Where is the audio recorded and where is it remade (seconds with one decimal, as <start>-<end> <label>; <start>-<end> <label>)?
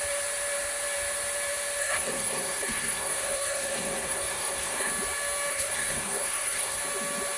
0.0-1.8 recorded; 1.8-4.9 remade; 4.9-5.5 recorded; 5.5-6.8 remade; 6.8-7.4 recorded